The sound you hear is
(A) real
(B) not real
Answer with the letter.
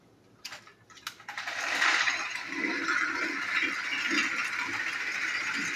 A